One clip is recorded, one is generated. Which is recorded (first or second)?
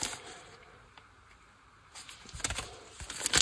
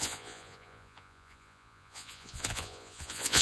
first